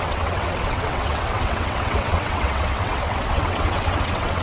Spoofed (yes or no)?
yes